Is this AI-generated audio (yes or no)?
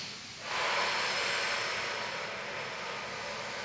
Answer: no